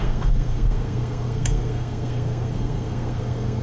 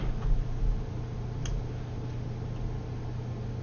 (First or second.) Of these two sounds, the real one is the second